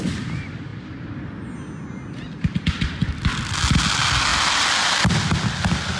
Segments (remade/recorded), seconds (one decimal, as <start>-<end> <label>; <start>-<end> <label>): 0.0-6.0 recorded